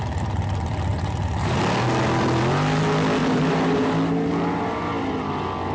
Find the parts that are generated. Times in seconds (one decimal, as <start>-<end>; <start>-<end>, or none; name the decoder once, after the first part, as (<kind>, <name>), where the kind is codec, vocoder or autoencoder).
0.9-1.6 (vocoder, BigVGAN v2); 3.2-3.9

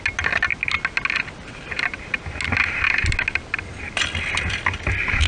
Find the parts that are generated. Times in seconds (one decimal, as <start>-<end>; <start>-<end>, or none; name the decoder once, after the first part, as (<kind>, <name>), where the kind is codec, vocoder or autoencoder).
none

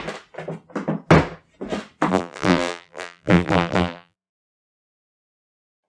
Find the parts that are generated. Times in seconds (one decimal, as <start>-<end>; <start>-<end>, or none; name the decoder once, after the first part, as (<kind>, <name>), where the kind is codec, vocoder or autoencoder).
2.1-4.3 (vocoder, BigVGAN v2)

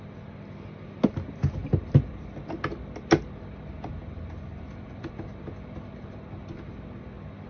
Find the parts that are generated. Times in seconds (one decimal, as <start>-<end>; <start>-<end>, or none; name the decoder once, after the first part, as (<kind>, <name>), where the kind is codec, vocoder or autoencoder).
1.6-2.5 (vocoder, BigVGAN v2); 4.0-5.1

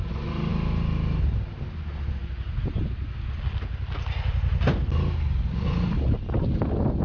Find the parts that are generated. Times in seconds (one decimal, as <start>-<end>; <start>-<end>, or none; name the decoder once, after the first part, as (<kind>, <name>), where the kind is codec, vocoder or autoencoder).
0.5-1.6 (vocoder, BigVGAN v2)